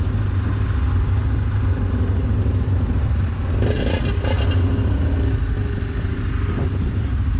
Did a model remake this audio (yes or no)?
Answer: no